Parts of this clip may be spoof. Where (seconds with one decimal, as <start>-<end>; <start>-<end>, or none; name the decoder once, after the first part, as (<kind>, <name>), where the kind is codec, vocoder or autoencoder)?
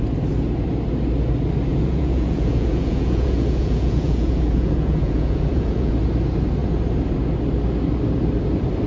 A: 1.7-5.9 (vocoder, Vocos)